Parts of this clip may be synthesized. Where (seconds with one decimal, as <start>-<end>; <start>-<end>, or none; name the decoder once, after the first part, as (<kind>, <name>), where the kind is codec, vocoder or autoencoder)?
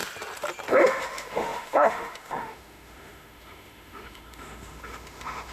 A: 0.7-5.5 (autoencoder, DAC-VAE)